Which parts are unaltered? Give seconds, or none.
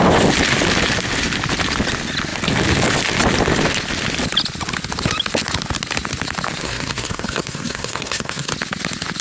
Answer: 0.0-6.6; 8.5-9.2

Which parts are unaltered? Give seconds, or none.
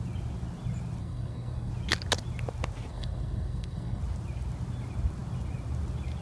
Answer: 0.0-1.0; 1.7-2.9; 4.0-6.2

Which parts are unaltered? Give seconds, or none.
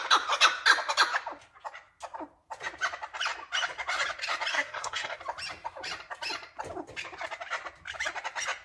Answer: 0.0-4.5; 5.2-8.6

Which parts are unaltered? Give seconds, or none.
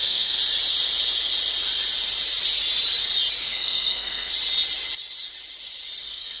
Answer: 0.4-3.4; 4.3-6.0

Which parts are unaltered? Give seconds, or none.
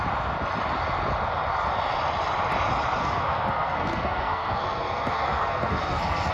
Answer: 0.0-3.0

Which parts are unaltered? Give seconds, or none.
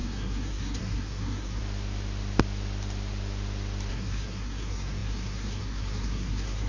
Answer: 1.6-3.9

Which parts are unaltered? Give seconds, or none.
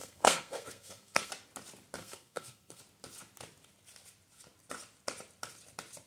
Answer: 1.3-2.0; 2.8-6.1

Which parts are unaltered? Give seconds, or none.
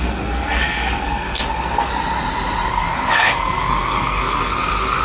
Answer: 1.9-2.7